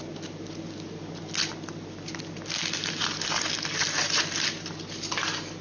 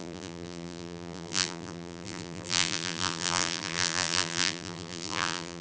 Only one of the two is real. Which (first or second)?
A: first